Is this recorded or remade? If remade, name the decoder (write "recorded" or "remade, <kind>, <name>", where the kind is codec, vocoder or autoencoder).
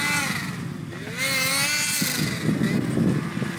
recorded